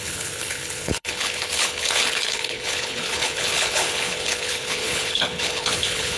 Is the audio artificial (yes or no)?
yes